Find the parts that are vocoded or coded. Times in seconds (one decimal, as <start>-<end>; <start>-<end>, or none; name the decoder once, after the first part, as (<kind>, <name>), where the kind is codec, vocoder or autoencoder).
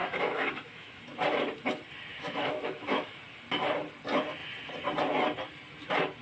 0.0-1.0 (autoencoder, DAC-VAE); 2.1-3.2